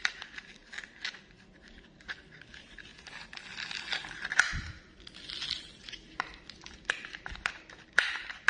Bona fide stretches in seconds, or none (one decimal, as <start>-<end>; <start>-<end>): 0.0-8.5